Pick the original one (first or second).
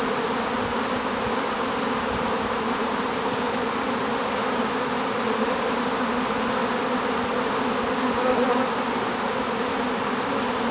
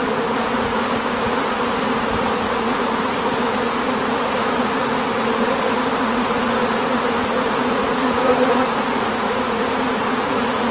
first